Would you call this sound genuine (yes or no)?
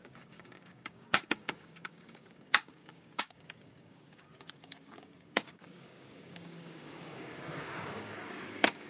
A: no